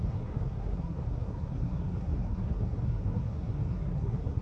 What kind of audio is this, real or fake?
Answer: fake